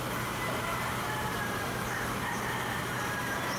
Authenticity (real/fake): fake